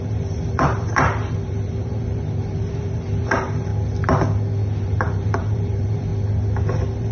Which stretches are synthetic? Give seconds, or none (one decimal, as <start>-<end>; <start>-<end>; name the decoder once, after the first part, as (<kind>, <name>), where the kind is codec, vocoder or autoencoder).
0.0-3.7 (vocoder, BigVGAN v2); 4.8-6.1; 6.6-7.1